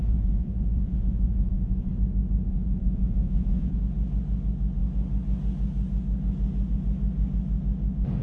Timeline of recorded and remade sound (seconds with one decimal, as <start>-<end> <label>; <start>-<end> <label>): 0.0-1.9 remade; 1.9-2.5 recorded; 2.5-3.8 remade; 3.8-8.2 recorded